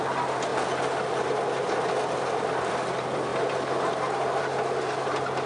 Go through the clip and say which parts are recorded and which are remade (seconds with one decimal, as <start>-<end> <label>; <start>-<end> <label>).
0.0-5.5 recorded